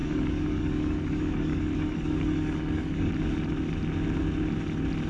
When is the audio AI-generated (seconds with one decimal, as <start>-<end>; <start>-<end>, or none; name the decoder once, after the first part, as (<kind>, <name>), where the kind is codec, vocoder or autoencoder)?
0.0-3.1 (codec, DAC)

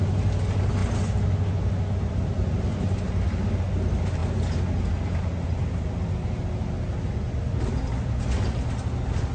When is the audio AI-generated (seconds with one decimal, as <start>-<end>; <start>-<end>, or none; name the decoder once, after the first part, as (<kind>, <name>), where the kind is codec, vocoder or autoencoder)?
none

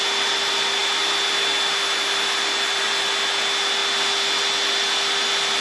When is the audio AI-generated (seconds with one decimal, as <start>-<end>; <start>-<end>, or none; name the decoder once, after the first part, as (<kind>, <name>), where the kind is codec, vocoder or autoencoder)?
none

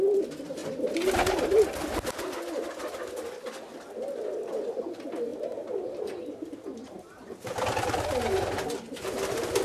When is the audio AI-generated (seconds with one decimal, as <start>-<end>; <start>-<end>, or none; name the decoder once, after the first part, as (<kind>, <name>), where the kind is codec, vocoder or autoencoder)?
5.3-6.0 (vocoder, BigVGAN v2); 6.8-7.3

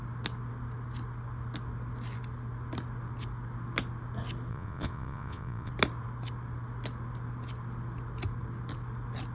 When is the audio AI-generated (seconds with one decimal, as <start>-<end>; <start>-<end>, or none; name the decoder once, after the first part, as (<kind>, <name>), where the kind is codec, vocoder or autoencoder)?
4.5-5.7 (vocoder, Vocos)

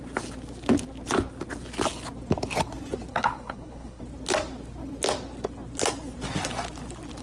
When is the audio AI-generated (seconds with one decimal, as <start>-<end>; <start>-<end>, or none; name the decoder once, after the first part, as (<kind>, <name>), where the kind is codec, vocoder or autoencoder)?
3.1-4.0 (codec, HILCodec)